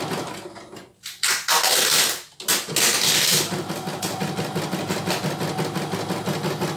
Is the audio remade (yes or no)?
no